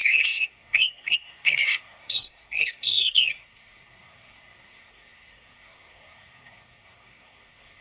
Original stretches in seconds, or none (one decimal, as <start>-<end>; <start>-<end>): none